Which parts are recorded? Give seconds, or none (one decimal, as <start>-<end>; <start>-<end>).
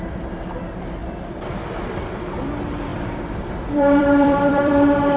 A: 0.0-1.0; 1.8-2.9; 4.7-5.2